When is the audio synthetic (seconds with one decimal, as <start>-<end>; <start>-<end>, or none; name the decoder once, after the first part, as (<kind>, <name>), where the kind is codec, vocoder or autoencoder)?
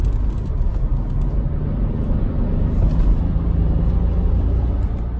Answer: none